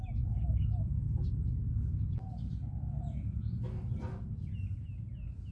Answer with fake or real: real